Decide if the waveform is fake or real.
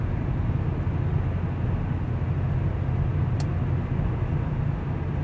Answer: real